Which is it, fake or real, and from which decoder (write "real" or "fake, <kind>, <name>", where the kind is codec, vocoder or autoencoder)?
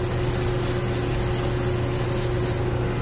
real